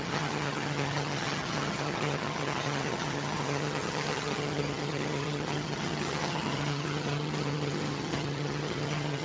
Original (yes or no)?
no